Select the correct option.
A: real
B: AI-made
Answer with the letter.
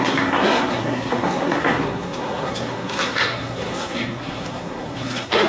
B